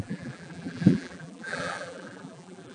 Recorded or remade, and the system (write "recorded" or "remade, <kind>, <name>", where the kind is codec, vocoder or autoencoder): remade, vocoder, BigVGAN v2